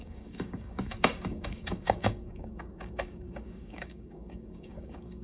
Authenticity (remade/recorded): remade